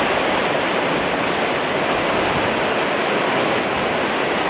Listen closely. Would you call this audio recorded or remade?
recorded